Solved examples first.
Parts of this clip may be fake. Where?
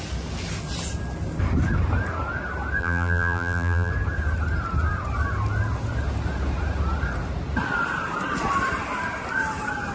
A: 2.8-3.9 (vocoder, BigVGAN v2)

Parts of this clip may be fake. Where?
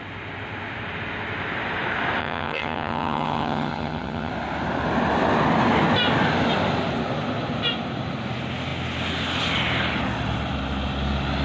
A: 2.2-4.3 (vocoder, HiFi-GAN)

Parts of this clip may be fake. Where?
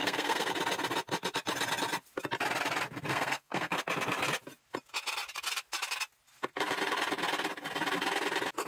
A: 0.0-0.5 (codec, SNAC); 3.1-3.8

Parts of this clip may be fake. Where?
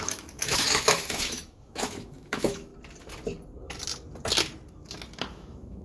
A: 0.0-2.7 (autoencoder, DAC-VAE); 5.3-5.8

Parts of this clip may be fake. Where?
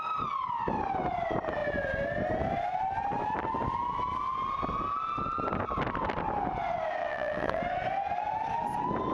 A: 7.0-7.6 (vocoder, WaveNeXt)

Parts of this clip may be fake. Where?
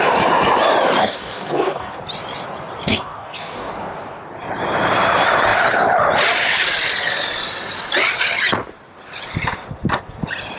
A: 1.0-2.0 (codec, DAC); 2.9-3.7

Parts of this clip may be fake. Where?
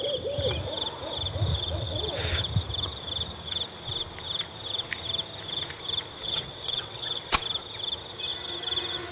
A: 1.5-2.4 (vocoder, WaveNeXt); 6.2-7.2